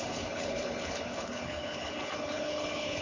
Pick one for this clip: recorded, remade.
remade